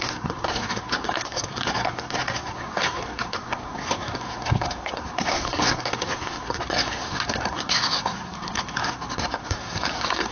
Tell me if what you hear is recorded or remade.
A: remade